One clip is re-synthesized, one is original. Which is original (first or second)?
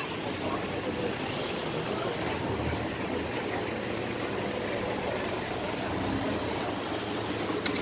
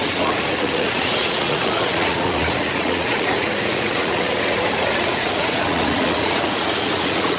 first